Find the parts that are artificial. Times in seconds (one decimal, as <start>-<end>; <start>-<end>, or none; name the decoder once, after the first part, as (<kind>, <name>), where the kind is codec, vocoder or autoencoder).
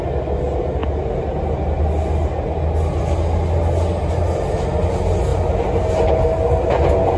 none